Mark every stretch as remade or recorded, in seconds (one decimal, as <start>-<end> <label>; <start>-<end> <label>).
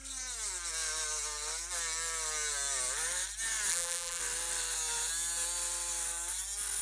0.0-3.7 recorded; 3.7-4.2 remade; 4.2-6.8 recorded